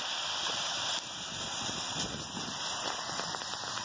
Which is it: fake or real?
real